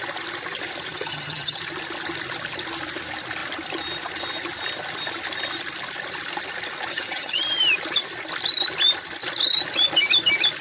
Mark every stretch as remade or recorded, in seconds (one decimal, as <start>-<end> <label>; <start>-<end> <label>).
0.0-0.9 recorded; 0.9-1.6 remade; 1.6-6.9 recorded; 6.9-7.4 remade; 7.4-10.6 recorded